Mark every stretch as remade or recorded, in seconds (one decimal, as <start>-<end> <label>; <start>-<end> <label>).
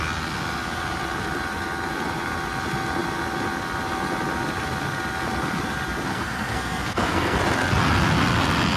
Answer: 0.0-6.1 recorded; 6.1-7.4 remade; 7.4-8.8 recorded